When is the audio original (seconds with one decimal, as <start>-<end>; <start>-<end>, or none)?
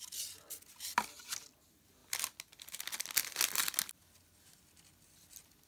0.0-5.7